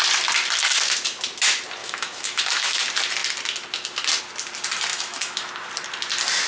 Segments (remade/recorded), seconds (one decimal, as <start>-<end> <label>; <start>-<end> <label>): 0.0-1.8 recorded; 1.8-2.6 remade; 2.6-4.9 recorded; 4.9-5.5 remade; 5.5-6.5 recorded